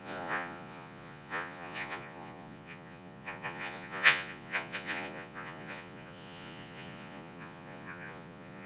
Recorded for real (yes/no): no